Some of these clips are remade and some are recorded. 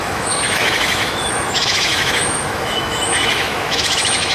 remade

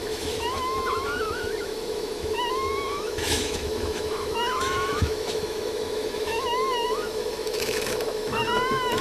remade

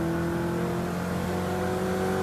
recorded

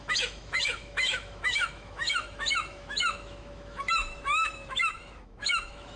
remade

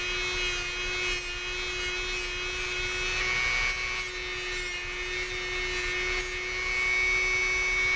recorded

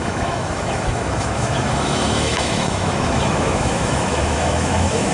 remade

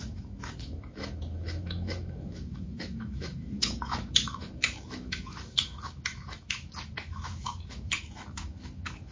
remade